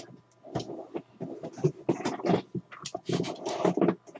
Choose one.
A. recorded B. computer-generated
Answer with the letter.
A